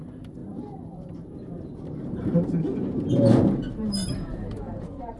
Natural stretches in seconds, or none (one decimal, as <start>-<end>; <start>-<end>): none